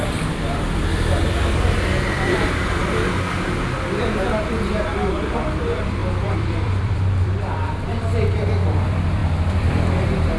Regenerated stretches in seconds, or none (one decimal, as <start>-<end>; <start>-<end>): 0.0-2.8; 5.1-10.4